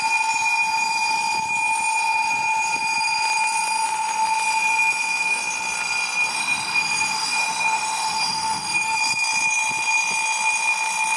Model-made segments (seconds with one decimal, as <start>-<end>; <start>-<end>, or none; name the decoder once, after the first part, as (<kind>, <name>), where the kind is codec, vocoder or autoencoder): 6.3-9.0 (autoencoder, DAC-VAE)